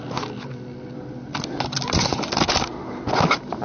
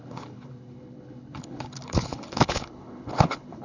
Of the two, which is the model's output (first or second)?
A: second